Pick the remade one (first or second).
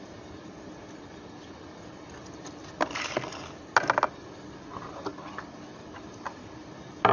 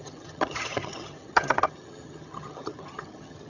second